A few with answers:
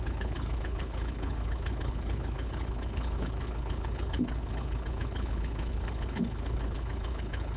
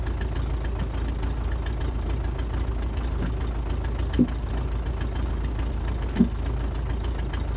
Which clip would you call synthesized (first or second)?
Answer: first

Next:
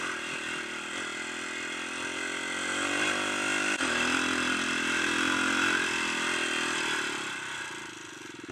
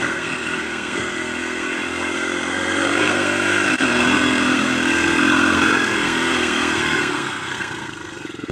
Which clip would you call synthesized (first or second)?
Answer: second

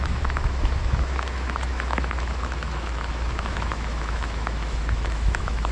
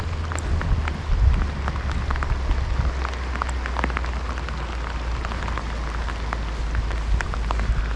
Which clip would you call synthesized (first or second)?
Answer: first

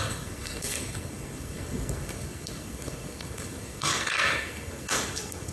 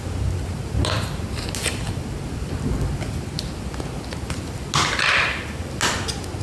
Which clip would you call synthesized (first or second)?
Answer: first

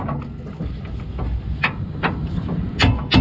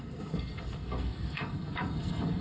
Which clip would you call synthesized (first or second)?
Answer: second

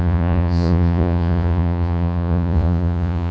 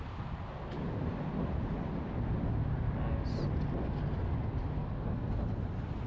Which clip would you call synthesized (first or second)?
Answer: first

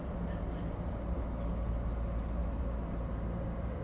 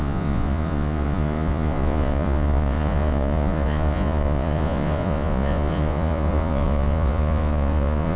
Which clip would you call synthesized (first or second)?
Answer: second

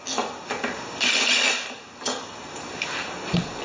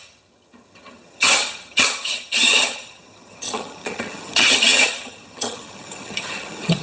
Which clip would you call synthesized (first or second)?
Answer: second